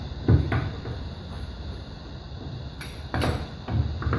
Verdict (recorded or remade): recorded